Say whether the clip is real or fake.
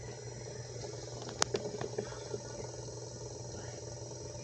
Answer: real